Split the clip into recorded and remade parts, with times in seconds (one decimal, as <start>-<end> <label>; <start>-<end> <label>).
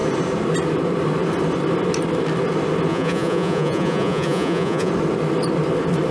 0.0-2.9 recorded; 2.9-4.9 remade; 4.9-6.1 recorded